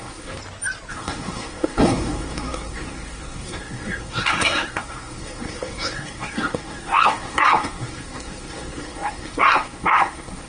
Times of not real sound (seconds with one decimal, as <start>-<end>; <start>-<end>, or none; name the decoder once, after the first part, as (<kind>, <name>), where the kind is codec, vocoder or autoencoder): 0.0-0.4 (codec, SNAC); 0.9-10.5

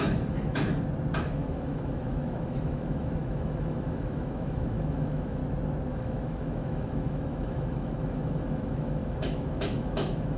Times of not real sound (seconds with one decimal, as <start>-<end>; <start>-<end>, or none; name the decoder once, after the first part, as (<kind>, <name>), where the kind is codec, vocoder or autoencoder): 0.0-0.7 (autoencoder, DAC-VAE); 1.2-5.4; 5.9-10.4

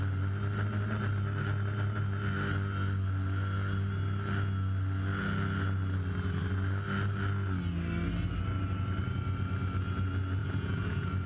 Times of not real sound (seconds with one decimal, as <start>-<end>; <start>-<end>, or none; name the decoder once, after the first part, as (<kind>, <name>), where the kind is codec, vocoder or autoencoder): 10.4-11.3 (vocoder, Vocos)